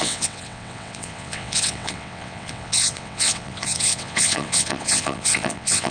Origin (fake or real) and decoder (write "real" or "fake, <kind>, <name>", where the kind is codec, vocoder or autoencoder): fake, vocoder, WaveNeXt